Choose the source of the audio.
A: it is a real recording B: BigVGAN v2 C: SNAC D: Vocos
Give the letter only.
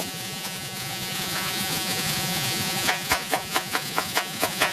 D